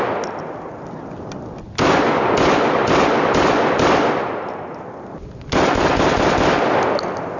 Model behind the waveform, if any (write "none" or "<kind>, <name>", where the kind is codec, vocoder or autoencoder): none